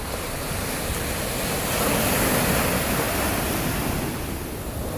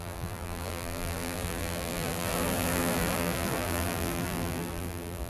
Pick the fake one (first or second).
second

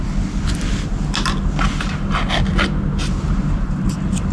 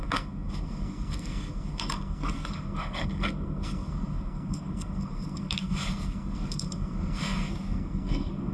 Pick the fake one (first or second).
second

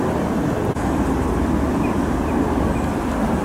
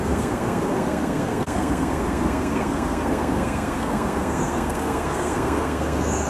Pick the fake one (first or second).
second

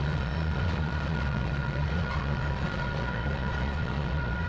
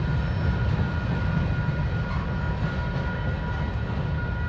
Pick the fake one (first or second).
first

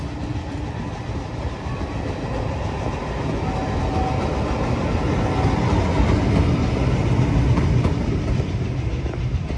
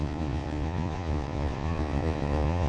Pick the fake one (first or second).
second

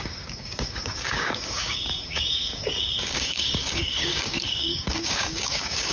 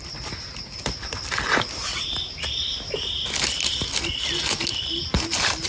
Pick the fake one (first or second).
first